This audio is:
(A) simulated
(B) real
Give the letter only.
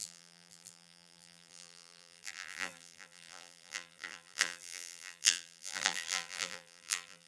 A